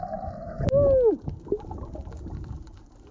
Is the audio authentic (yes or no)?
yes